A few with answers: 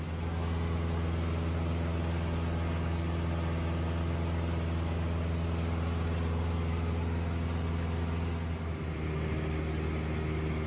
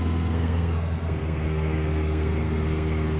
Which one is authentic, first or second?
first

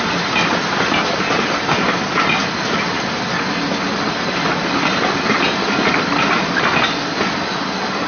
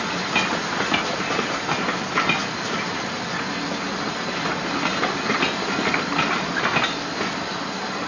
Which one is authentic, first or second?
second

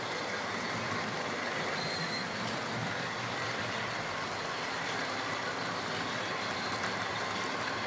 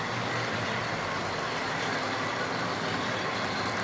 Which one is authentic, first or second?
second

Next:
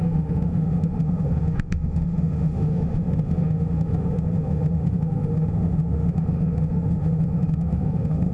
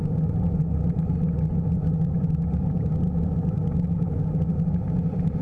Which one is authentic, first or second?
second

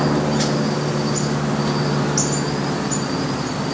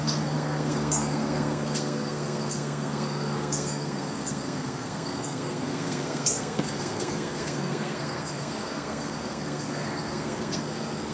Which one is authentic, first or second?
first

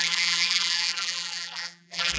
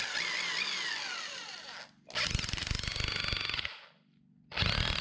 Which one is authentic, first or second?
second